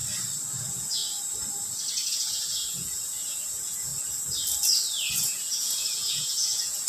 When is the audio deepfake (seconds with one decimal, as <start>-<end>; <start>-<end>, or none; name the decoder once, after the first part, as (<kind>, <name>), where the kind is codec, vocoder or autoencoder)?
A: 0.6-1.0 (vocoder, Vocos); 2.1-3.9; 5.1-6.9